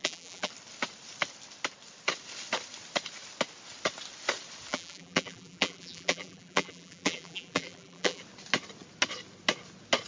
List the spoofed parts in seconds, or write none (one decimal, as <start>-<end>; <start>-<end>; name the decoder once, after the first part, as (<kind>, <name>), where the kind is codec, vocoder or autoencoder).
0.0-0.5 (vocoder, BigVGAN v2); 4.7-8.2